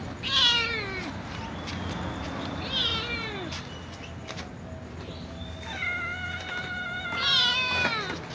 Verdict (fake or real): real